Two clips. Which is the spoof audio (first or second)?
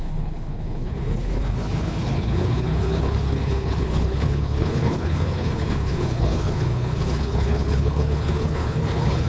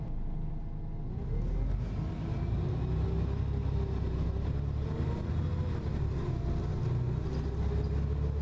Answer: first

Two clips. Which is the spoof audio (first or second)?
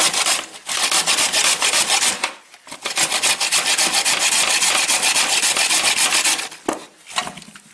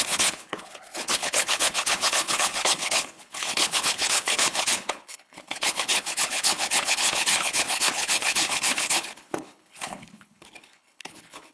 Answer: second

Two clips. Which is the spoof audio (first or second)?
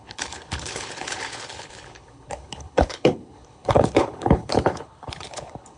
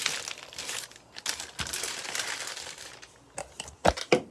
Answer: first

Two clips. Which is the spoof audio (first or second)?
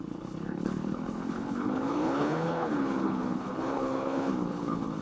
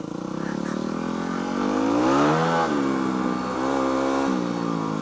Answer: first